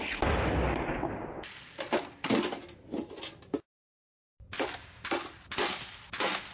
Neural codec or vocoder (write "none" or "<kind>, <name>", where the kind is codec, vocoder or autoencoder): none